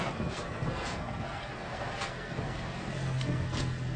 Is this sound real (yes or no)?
no